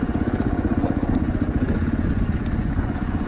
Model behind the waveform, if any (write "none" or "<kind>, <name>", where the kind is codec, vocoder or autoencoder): vocoder, Vocos